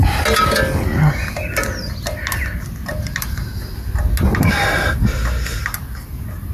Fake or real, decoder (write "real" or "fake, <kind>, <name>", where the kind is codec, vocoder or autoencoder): real